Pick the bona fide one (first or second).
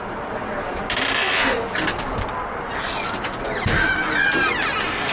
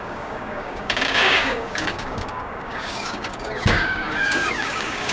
first